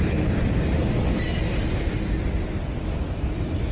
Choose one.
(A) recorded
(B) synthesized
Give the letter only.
A